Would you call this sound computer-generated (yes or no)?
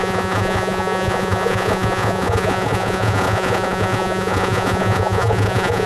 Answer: yes